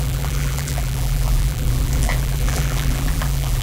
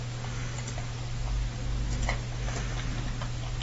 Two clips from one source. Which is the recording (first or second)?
second